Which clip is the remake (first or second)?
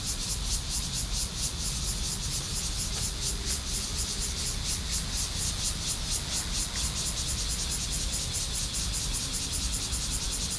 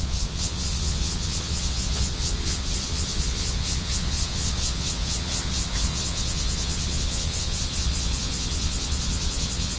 second